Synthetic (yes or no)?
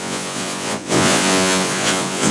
yes